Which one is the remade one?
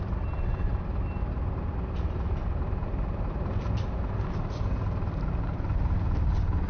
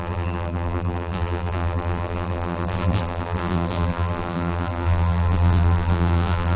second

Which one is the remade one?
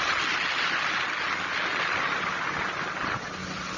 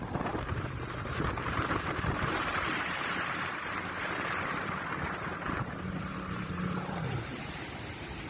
second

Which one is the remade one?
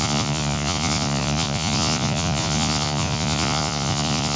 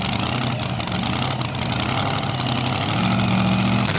first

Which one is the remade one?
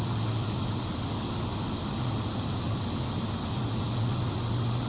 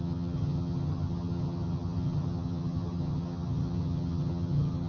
second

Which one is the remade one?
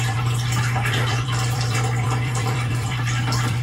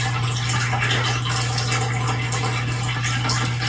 first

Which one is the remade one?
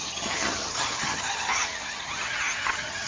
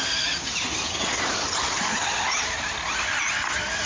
first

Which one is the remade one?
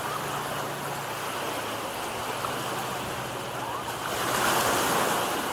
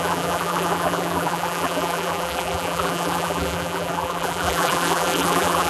second